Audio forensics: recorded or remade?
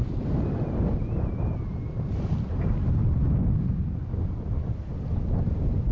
recorded